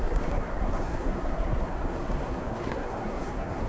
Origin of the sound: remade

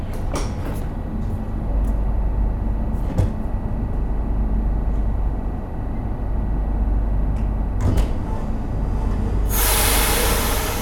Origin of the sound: recorded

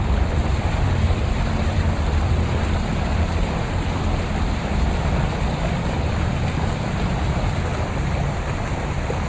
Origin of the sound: remade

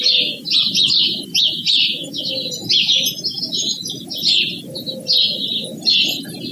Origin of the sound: recorded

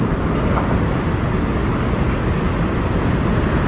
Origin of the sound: recorded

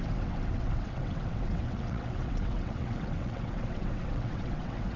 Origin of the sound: remade